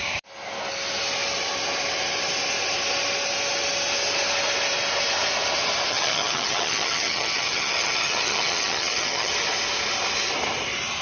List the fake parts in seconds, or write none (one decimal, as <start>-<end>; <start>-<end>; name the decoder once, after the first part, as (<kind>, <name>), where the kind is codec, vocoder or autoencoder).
5.9-9.3 (vocoder, HiFi-GAN)